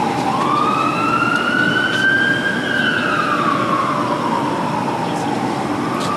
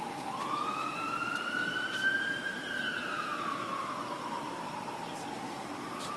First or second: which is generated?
second